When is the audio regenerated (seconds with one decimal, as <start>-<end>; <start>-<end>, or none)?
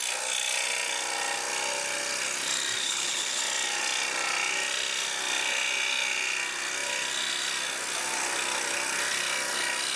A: 2.8-3.4